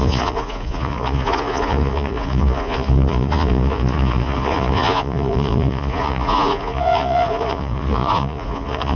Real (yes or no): no